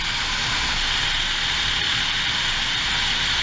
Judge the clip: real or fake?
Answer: real